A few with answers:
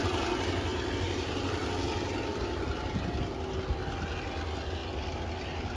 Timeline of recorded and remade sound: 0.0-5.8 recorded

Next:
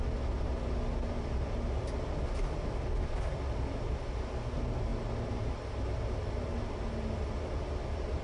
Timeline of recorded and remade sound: 0.0-8.2 recorded